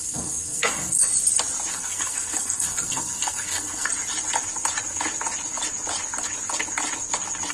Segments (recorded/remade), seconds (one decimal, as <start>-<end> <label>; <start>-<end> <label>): 0.0-1.1 remade; 1.1-1.7 recorded; 1.7-3.9 remade; 3.9-7.5 recorded